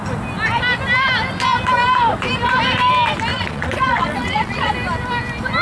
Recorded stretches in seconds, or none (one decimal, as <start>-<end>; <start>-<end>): 0.0-3.3; 4.7-5.6